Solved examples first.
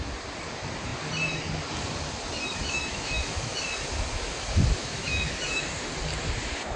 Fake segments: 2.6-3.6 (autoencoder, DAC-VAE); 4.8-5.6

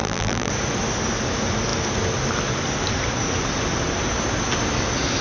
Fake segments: 0.0-0.5 (vocoder, BigVGAN v2)

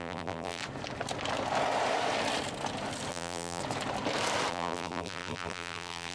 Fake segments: 0.0-0.6 (vocoder, BigVGAN v2); 3.1-3.6; 4.5-6.1

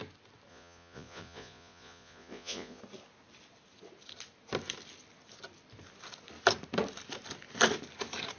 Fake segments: 0.5-2.8 (vocoder, Vocos)

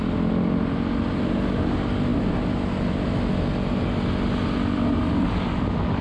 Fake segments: none